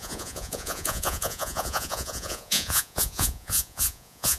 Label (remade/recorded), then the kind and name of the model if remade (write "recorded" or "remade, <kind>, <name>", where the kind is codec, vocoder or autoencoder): remade, vocoder, Vocos